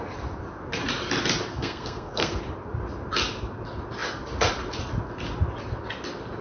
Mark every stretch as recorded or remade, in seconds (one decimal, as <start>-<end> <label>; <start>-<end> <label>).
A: 0.0-1.5 recorded; 1.5-2.4 remade; 2.4-6.4 recorded